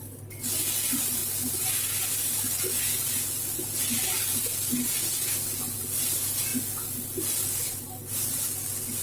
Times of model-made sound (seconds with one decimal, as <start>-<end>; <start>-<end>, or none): none